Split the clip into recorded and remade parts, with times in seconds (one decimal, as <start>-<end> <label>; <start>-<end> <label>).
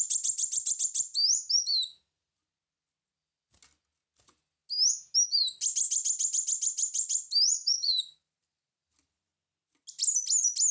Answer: 0.0-7.5 recorded; 7.5-9.3 remade; 9.3-10.7 recorded